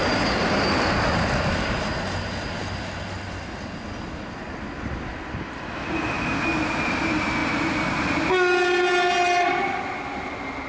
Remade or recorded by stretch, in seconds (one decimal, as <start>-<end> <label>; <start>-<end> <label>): 0.0-10.7 recorded